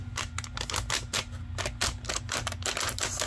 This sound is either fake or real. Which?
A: real